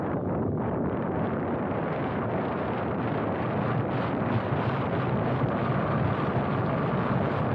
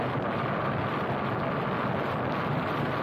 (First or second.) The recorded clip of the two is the second